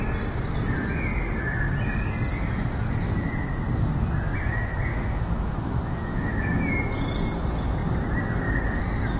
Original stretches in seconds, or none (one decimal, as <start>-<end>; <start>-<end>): 0.0-4.9; 6.7-9.2